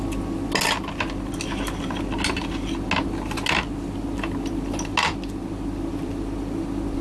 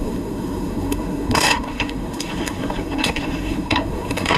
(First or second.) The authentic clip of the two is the first